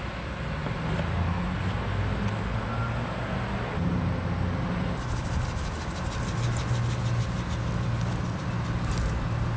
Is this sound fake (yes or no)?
no